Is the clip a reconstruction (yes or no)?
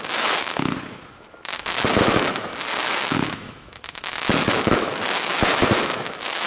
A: yes